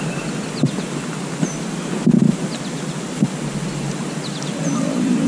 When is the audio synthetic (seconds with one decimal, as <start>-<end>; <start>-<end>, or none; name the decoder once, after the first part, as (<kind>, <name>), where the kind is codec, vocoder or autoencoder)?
none